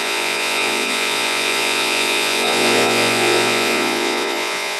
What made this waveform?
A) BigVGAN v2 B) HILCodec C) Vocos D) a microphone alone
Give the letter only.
C